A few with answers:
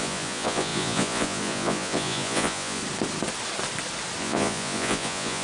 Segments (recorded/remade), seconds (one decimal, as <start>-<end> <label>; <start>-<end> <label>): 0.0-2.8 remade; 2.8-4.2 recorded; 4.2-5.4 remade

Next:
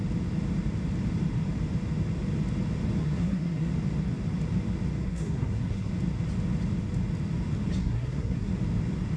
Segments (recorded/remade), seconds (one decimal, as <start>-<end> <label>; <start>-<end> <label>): 0.0-3.0 recorded; 3.0-3.7 remade; 3.7-5.0 recorded; 5.0-5.9 remade; 5.9-7.8 recorded; 7.8-8.5 remade; 8.5-9.2 recorded

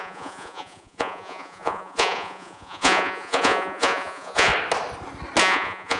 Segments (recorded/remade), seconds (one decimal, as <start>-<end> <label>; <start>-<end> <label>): 0.0-4.5 remade; 4.5-5.4 recorded; 5.4-6.0 remade

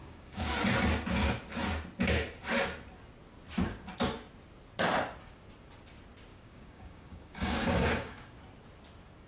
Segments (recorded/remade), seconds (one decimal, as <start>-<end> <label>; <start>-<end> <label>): 0.0-0.5 remade; 0.5-6.3 recorded; 6.3-8.4 remade; 8.4-9.3 recorded

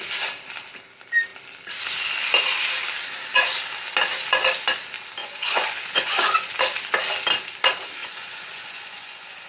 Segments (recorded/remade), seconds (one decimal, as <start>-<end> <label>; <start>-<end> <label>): 0.0-5.2 recorded; 5.2-6.5 remade; 6.5-8.0 recorded; 8.0-9.5 remade

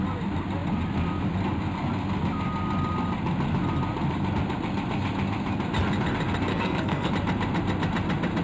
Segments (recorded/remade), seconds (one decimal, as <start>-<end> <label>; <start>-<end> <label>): 0.0-6.5 recorded; 6.5-7.1 remade; 7.1-8.4 recorded

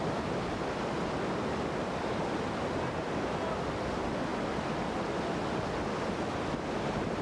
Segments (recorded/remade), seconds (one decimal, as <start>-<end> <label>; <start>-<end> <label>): 0.0-7.2 recorded